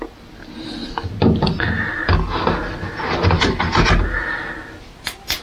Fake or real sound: real